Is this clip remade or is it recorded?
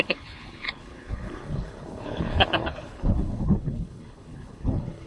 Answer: remade